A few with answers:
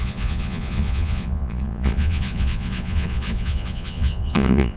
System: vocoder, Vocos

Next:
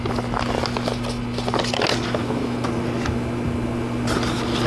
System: none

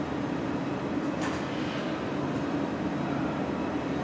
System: none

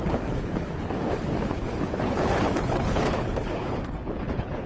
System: codec, HILCodec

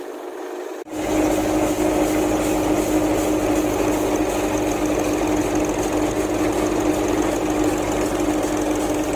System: none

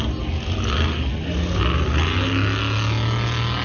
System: none